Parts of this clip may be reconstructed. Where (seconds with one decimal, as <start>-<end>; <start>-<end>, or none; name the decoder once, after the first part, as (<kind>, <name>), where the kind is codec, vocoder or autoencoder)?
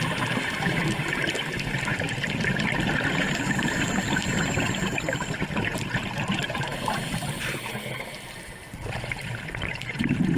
0.0-1.9 (vocoder, BigVGAN v2); 4.1-10.4